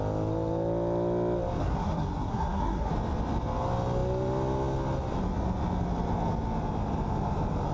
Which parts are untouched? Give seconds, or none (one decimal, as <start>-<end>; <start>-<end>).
0.0-1.6; 2.9-7.7